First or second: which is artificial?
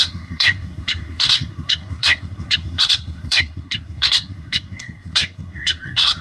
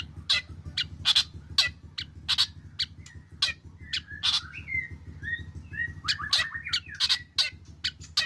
first